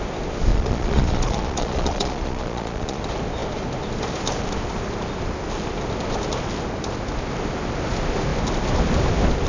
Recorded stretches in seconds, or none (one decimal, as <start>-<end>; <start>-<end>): 0.0-0.5; 3.0-9.5